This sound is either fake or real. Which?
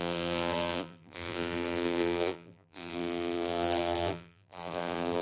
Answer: fake